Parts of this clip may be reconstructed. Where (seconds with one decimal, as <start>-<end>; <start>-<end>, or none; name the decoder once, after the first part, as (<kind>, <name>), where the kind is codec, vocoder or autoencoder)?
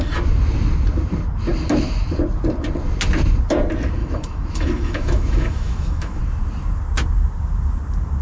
4.0-6.2 (autoencoder, DAC-VAE)